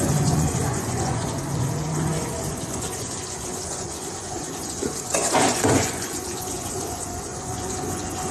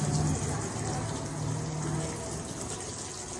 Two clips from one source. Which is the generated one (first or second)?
first